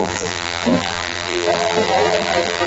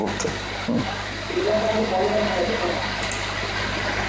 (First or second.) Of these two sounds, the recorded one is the second